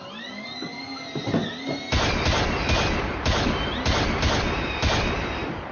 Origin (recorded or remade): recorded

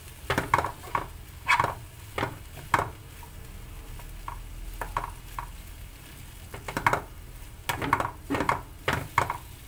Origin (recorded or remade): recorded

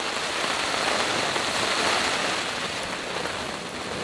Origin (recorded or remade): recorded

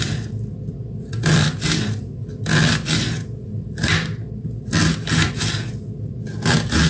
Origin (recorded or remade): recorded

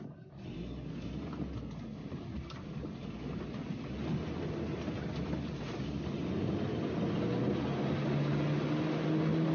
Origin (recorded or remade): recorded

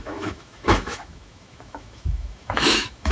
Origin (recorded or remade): remade